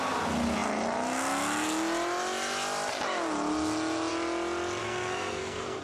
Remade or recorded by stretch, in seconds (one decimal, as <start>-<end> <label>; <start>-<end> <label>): 0.0-4.8 recorded; 4.8-5.8 remade